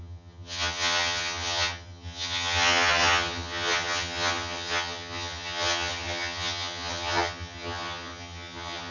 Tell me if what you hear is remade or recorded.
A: remade